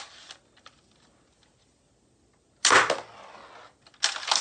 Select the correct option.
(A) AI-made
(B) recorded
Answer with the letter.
B